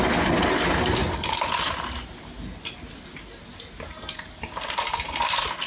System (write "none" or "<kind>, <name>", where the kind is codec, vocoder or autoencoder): none